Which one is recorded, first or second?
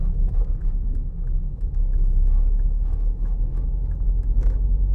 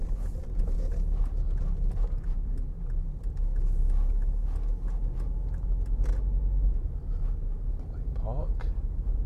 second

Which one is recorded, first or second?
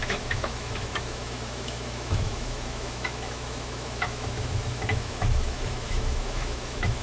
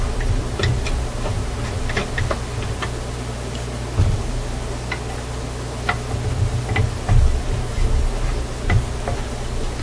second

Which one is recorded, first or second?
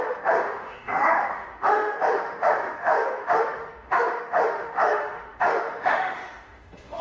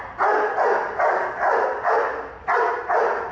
second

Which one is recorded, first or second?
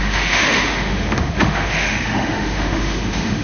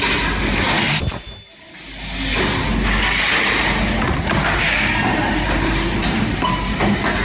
second